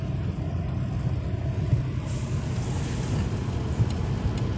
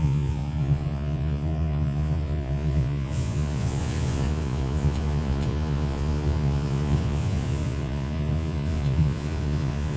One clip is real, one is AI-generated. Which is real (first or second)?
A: first